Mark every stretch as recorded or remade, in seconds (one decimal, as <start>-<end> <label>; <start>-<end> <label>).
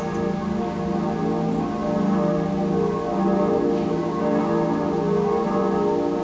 0.0-6.2 recorded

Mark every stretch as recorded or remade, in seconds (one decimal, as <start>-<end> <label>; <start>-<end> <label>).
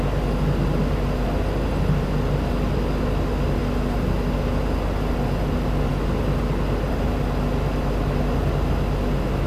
0.0-9.5 recorded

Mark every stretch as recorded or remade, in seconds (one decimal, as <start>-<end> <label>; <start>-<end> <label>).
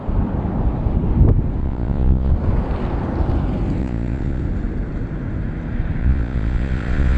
0.0-1.6 recorded; 1.6-2.3 remade; 2.3-3.8 recorded; 3.8-4.4 remade; 4.4-6.0 recorded; 6.0-7.2 remade